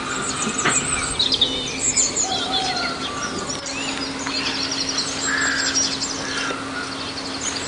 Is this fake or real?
real